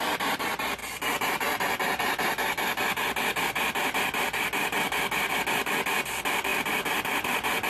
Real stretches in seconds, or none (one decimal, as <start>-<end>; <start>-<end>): none